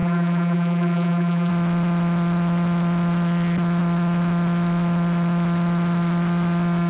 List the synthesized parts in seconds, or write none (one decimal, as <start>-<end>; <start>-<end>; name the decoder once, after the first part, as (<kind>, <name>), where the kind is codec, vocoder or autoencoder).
0.0-1.5 (vocoder, BigVGAN v2)